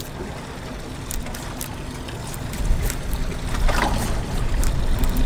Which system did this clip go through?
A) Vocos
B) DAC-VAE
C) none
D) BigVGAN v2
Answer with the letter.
C